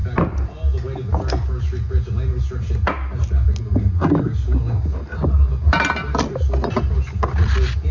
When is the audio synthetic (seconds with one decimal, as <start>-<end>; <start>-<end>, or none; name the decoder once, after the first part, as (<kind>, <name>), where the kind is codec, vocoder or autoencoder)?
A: none

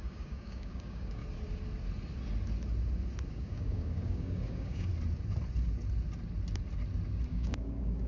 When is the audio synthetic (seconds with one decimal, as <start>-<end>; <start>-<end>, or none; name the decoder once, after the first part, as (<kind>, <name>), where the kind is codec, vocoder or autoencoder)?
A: 0.0-1.2 (codec, DAC); 3.3-4.9; 7.3-8.1

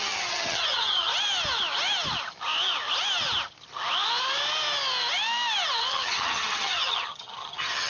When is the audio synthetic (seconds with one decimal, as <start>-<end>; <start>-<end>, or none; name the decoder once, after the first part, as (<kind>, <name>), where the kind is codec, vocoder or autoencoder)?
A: 0.0-1.1 (vocoder, HiFi-GAN); 5.8-7.9

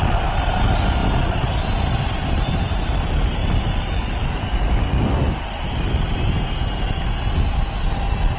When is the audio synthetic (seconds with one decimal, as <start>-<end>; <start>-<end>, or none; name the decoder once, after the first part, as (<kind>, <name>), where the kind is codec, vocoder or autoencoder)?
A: none

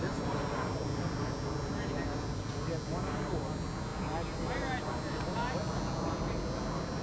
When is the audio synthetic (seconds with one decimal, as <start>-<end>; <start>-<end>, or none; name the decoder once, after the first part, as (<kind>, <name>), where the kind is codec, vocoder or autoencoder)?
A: none